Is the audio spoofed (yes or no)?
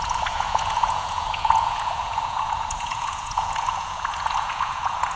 yes